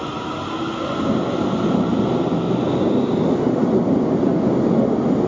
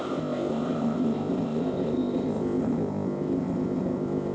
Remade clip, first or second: second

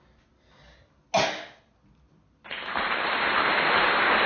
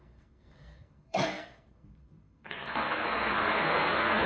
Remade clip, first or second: second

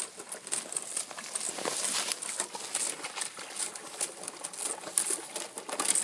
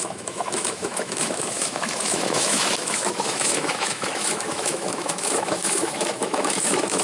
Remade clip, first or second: second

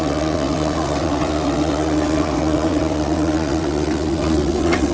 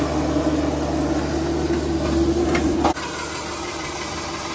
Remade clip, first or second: first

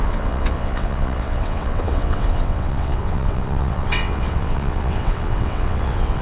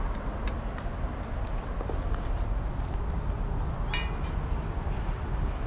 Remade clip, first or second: first